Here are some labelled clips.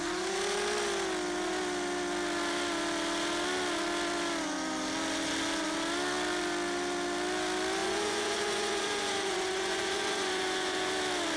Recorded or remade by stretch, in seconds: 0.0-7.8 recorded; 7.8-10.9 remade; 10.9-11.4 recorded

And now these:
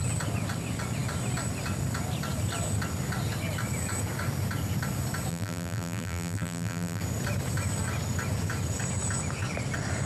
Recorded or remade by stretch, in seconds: 0.0-5.3 recorded; 5.3-7.0 remade; 7.0-10.1 recorded

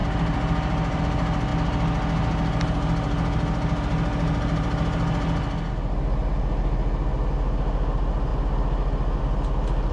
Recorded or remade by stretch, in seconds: 0.0-1.0 remade; 1.0-9.9 recorded

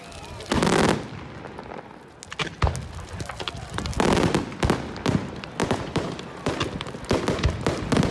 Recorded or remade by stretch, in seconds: 0.0-5.6 recorded; 5.6-6.6 remade; 6.6-8.1 recorded

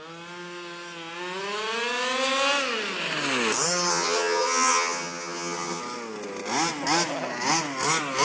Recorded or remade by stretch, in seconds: 0.0-3.9 recorded; 3.9-5.8 remade; 5.8-8.2 recorded

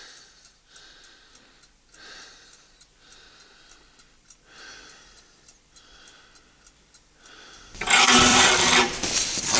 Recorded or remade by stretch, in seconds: 0.0-8.3 recorded; 8.3-9.6 remade

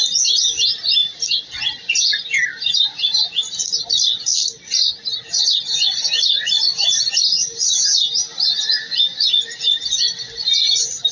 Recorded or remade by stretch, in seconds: 0.0-11.1 recorded

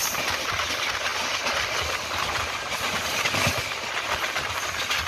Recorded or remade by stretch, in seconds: 0.0-5.1 recorded